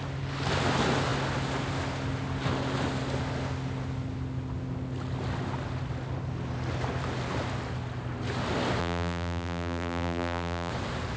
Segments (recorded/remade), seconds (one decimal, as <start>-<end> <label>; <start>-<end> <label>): 0.0-8.8 recorded; 8.8-10.7 remade; 10.7-11.2 recorded